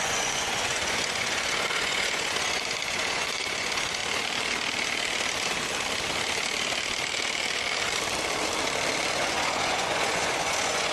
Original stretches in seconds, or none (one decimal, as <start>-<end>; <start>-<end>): 4.0-9.1